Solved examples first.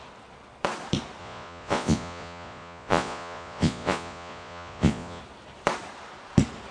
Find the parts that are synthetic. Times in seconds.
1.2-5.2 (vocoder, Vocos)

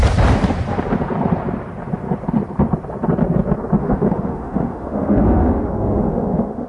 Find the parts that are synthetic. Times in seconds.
3.8-6.7 (autoencoder, DAC-VAE)

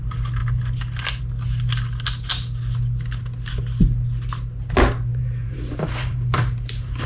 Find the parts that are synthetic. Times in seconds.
5.1-7.1 (vocoder, BigVGAN v2)

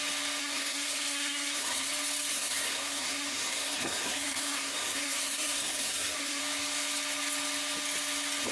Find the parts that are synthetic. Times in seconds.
0.4-1.9 (codec, SNAC); 2.3-6.4